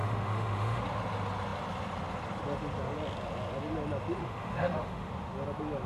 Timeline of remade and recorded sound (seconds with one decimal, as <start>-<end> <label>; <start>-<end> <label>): 0.0-0.8 remade; 0.8-4.2 recorded; 4.2-5.1 remade; 5.1-5.9 recorded